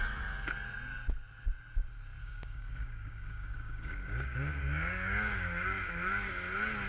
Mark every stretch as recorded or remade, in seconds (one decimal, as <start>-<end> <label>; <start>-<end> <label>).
0.0-2.2 recorded; 2.2-6.3 remade; 6.3-6.9 recorded

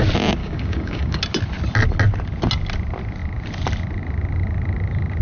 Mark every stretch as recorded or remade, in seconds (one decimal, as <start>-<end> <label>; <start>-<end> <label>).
0.0-0.4 recorded; 0.4-1.2 remade; 1.2-5.2 recorded

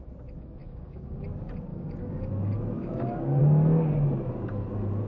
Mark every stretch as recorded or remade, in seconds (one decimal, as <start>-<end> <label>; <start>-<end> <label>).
0.0-0.6 recorded; 0.6-1.2 remade; 1.2-1.7 recorded; 1.7-2.3 remade; 2.3-2.8 recorded; 2.8-3.4 remade; 3.4-5.1 recorded

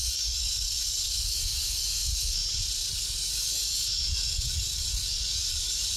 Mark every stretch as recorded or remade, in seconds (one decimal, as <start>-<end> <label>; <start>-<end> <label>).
0.0-2.4 remade; 2.4-2.9 recorded; 2.9-6.0 remade

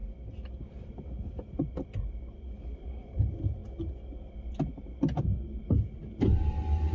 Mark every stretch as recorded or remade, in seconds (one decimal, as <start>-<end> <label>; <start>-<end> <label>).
0.0-6.9 recorded

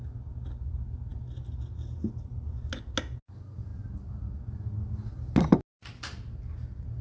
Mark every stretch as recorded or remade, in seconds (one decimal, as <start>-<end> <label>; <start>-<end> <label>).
0.0-7.0 recorded

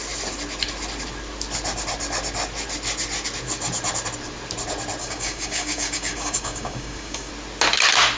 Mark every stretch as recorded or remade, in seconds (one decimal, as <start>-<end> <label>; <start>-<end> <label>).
0.0-5.0 recorded; 5.0-7.3 remade; 7.3-8.2 recorded

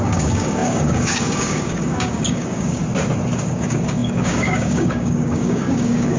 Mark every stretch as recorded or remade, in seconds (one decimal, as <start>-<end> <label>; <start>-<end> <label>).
0.0-2.8 remade; 2.8-3.4 recorded; 3.4-6.2 remade